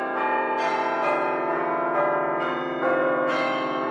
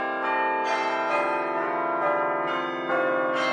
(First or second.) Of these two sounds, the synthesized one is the first